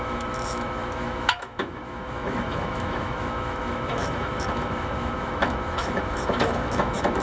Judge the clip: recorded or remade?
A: remade